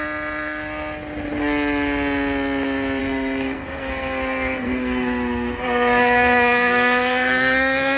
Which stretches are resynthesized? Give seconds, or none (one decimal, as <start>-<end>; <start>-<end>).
3.0-8.0